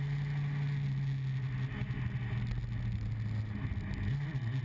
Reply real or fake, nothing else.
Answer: real